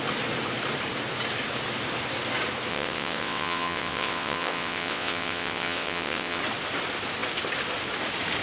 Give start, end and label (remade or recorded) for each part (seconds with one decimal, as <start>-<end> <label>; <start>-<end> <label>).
0.0-2.7 recorded; 2.7-6.4 remade; 6.4-8.4 recorded